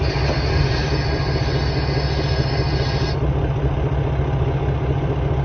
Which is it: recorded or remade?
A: recorded